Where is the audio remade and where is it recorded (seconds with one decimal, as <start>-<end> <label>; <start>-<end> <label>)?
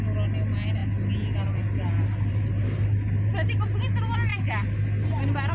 0.0-5.5 recorded